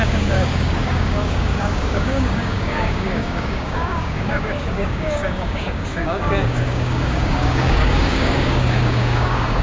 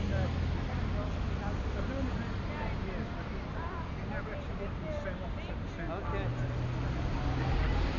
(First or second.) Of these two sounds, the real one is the second